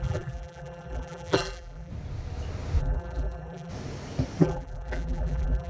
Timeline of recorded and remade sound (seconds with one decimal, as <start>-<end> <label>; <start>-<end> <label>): 0.0-1.9 remade; 1.9-2.8 recorded; 2.8-3.7 remade; 3.7-4.4 recorded; 4.4-5.7 remade